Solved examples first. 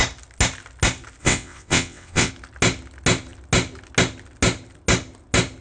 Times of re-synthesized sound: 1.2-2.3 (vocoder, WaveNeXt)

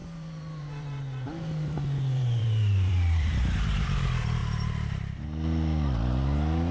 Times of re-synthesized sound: 0.0-4.0 (vocoder, BigVGAN v2); 4.4-5.2

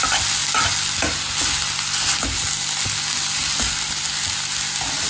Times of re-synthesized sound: none

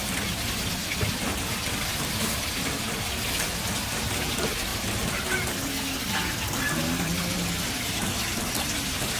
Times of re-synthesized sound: none

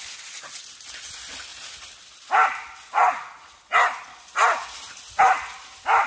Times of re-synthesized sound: none